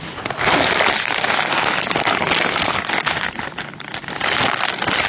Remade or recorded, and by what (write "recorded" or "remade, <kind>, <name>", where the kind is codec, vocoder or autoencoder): recorded